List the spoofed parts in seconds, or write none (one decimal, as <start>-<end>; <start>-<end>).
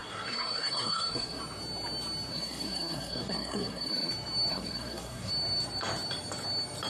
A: 0.0-1.4; 2.3-4.1; 4.5-5.3